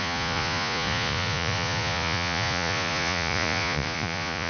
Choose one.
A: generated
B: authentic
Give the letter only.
A